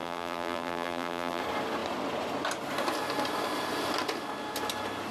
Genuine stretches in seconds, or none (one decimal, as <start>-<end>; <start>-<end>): 1.4-5.1